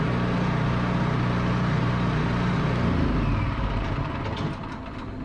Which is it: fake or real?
real